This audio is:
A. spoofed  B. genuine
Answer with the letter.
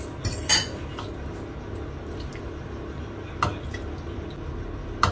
B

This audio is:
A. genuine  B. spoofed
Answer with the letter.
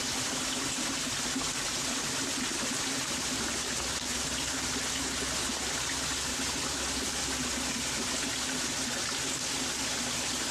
A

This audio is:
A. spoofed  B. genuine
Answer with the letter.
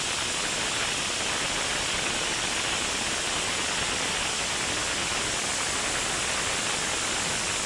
B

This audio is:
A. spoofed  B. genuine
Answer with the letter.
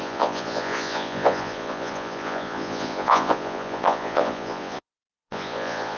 A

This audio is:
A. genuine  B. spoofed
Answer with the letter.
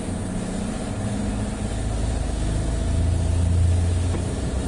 A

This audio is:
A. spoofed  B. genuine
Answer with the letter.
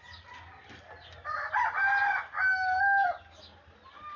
B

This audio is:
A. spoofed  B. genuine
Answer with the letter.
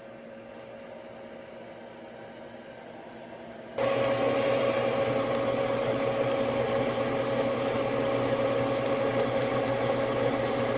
B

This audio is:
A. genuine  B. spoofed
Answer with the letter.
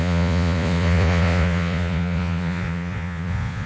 B